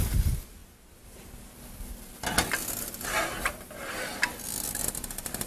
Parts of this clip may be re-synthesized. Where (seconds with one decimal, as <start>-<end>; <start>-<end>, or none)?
none